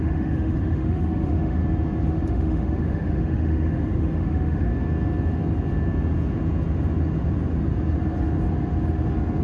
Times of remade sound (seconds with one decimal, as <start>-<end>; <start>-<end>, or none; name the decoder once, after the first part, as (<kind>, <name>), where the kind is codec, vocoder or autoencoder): 0.0-1.6 (autoencoder, DAC-VAE); 2.1-4.7